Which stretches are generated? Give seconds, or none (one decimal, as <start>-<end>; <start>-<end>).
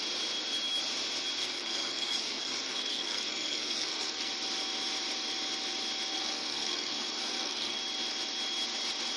1.4-4.3; 6.1-7.8